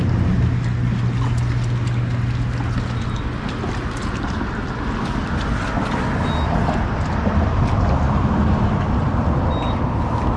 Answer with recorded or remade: recorded